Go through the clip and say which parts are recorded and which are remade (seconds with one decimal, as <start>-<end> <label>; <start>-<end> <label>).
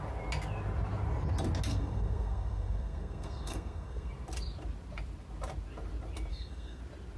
0.0-1.7 recorded; 1.7-4.1 remade; 4.1-6.3 recorded; 6.3-6.8 remade; 6.8-7.2 recorded